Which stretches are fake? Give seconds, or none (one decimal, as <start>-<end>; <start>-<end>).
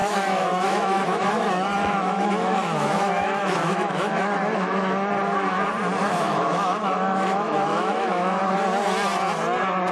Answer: 0.0-5.1; 6.0-8.4